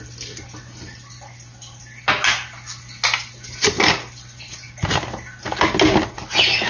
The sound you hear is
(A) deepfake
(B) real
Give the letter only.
B